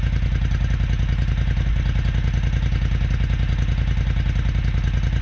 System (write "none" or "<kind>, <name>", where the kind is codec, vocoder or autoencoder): none